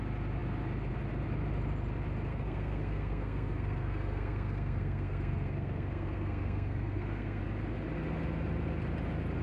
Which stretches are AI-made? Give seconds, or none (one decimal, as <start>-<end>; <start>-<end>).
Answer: 2.3-7.4